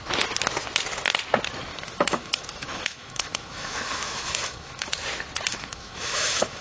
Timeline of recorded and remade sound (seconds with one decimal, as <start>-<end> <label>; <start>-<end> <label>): 0.0-1.7 recorded; 1.7-4.9 remade; 4.9-5.5 recorded; 5.5-6.6 remade